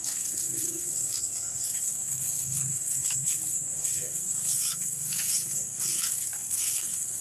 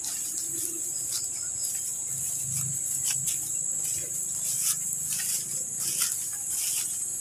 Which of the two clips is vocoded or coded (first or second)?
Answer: first